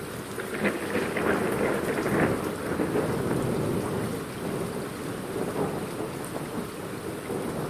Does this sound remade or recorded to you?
recorded